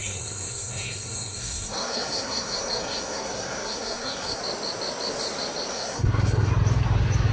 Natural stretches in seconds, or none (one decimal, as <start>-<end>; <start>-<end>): 4.4-5.7; 6.5-7.3